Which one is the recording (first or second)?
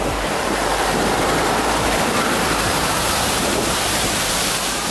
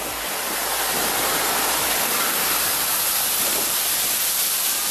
second